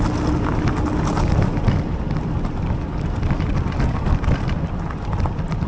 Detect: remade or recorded recorded